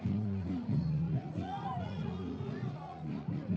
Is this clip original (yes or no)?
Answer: no